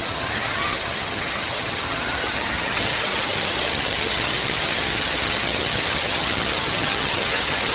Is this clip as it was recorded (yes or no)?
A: no